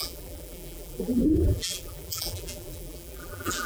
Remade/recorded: remade